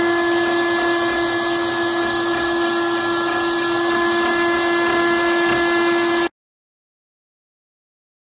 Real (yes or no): yes